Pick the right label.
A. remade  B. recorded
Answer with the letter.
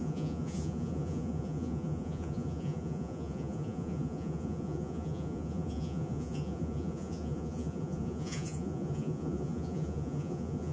A